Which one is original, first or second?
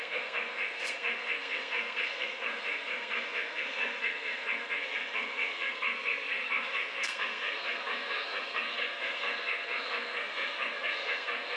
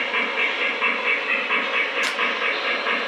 second